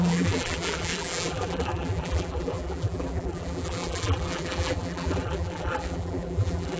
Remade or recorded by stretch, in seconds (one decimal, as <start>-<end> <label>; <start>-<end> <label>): 0.0-6.8 remade